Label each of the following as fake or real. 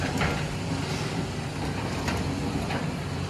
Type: real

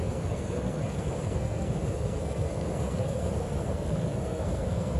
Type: fake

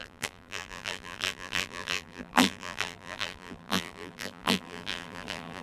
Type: fake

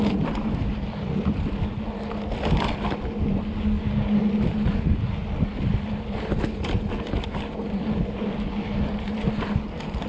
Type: real